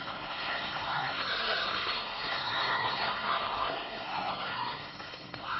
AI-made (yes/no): yes